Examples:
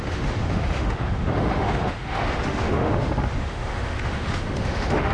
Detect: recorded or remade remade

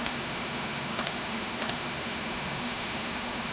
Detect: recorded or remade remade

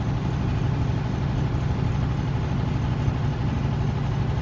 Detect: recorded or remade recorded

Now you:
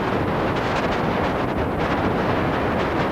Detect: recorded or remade recorded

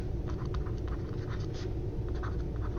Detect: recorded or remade recorded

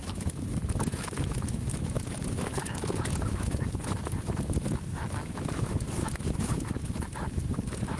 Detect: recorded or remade remade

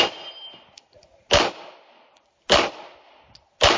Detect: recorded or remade recorded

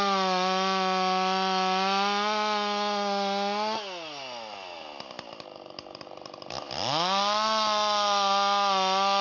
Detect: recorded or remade recorded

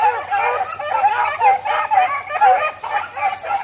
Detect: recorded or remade recorded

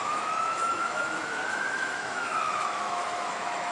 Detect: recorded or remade remade